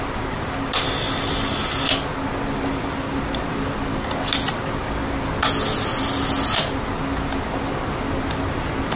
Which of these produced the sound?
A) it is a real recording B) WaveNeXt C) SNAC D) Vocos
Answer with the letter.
A